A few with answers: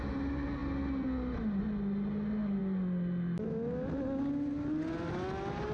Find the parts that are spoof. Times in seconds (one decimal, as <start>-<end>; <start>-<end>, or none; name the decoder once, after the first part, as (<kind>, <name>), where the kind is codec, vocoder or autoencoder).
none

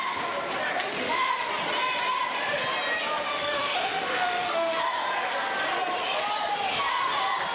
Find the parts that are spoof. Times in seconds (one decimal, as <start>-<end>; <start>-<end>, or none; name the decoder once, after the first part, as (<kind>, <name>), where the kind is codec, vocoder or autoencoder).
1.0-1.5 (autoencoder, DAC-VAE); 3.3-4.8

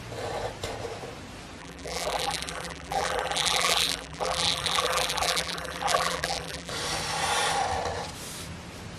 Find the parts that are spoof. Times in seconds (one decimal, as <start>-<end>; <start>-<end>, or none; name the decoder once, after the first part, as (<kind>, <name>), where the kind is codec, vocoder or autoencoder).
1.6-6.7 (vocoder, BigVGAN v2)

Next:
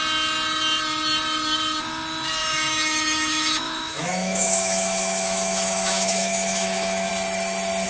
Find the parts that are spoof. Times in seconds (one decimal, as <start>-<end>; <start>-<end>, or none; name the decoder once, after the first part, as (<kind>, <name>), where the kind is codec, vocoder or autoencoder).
2.4-7.1 (autoencoder, DAC-VAE)